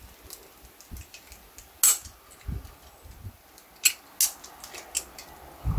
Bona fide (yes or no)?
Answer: yes